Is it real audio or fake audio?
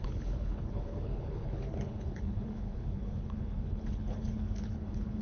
fake